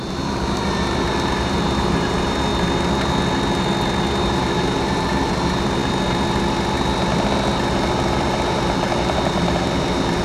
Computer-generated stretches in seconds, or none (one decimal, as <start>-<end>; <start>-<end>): 0.0-2.5; 4.2-5.8; 7.7-10.2